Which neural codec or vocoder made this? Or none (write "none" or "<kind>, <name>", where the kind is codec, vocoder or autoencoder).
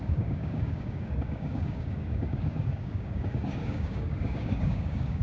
codec, DAC